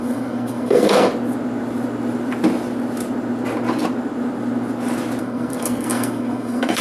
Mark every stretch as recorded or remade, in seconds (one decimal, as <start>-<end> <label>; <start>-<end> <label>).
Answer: 0.0-1.1 remade; 1.1-5.2 recorded; 5.2-6.8 remade